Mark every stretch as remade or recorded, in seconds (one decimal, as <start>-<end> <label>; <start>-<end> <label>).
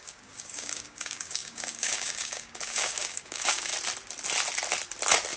0.0-3.7 remade; 3.7-5.4 recorded